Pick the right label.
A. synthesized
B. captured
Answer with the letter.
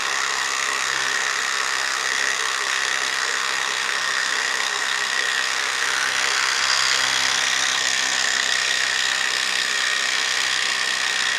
A